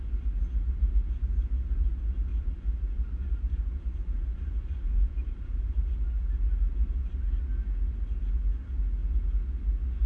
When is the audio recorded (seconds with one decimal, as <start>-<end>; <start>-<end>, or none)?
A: 0.0-1.2; 1.9-2.3; 7.4-10.1